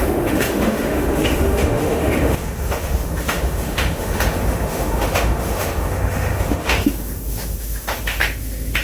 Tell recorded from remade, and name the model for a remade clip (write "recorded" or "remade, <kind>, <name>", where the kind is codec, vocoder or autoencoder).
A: remade, autoencoder, DAC-VAE